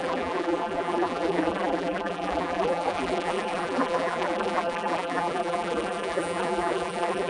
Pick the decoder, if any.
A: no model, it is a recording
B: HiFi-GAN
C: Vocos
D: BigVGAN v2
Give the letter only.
D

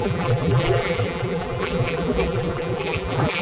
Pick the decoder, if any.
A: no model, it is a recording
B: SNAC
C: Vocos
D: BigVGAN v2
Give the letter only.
D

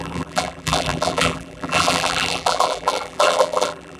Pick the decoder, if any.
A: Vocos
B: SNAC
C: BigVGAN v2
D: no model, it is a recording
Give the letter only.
C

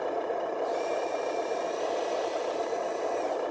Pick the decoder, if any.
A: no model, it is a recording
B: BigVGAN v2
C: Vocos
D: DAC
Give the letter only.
B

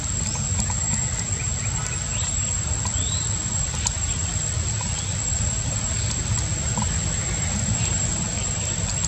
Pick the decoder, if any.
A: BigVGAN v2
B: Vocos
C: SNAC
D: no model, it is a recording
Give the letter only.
D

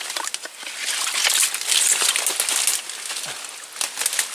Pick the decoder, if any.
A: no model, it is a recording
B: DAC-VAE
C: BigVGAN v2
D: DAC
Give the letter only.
A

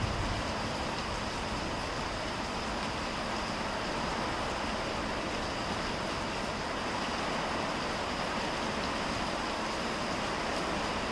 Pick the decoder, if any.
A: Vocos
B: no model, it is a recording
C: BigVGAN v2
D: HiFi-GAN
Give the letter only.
B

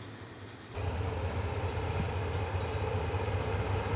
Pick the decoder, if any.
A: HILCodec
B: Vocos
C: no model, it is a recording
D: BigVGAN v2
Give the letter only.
C